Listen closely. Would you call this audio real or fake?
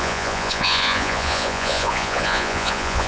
fake